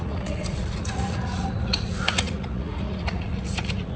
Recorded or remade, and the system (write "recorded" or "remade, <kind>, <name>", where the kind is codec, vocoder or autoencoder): remade, vocoder, Vocos